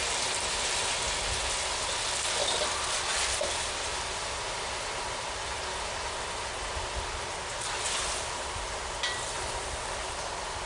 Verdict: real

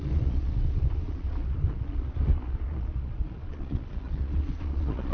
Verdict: fake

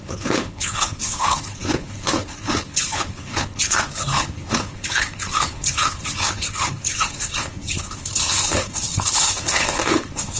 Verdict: fake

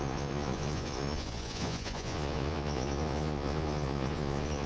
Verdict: fake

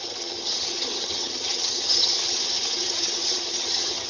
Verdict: fake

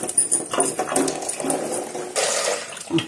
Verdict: real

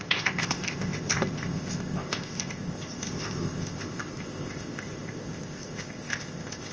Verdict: fake